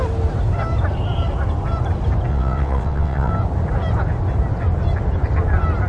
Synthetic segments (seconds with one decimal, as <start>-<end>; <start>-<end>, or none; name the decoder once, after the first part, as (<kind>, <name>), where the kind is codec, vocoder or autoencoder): 2.3-3.3 (vocoder, WaveNeXt)